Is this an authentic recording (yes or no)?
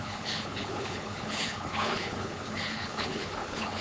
no